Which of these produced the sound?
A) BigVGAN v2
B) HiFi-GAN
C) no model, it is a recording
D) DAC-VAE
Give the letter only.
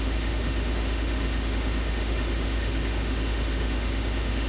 D